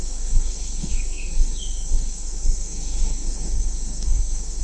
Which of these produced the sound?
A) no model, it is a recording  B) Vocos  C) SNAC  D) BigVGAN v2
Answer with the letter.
C